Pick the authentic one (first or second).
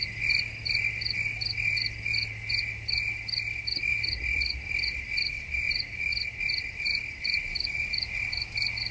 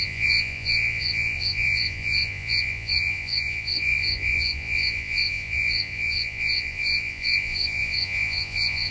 first